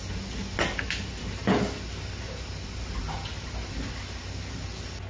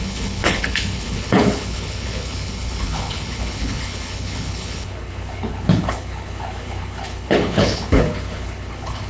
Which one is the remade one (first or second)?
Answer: second